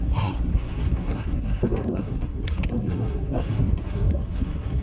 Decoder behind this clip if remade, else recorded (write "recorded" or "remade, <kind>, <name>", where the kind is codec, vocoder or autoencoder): remade, codec, SNAC